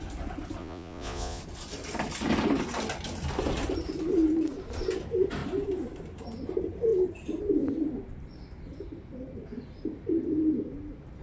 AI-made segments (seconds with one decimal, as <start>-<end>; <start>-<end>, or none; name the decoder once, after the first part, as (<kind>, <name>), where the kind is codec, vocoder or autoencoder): 0.6-1.4 (vocoder, Vocos)